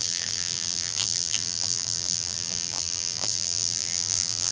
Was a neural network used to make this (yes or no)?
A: yes